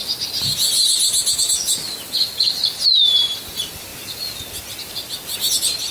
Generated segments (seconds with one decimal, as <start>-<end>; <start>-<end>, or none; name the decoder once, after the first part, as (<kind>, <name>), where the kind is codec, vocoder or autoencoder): none